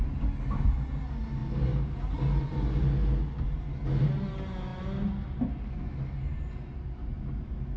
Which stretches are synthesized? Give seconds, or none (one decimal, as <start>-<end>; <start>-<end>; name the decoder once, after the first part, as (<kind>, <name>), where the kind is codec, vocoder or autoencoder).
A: none